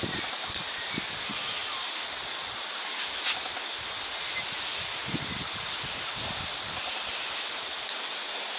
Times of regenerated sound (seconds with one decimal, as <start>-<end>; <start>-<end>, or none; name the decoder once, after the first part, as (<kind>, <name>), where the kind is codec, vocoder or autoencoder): none